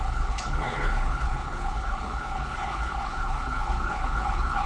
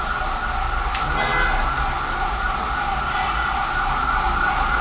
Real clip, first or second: second